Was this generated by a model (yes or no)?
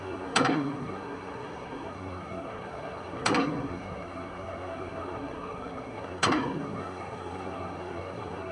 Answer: yes